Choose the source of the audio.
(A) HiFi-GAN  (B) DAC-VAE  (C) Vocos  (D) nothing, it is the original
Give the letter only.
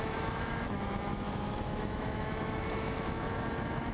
B